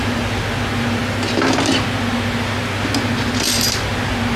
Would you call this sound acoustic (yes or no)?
yes